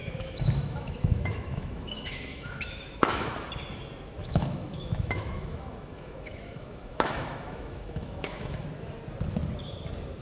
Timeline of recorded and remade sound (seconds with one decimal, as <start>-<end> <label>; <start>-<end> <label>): 0.0-3.5 remade; 3.5-4.2 recorded; 4.2-8.6 remade; 8.6-10.2 recorded